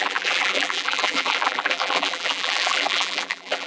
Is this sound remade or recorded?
remade